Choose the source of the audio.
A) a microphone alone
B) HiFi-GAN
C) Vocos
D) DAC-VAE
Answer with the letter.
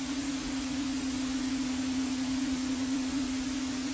C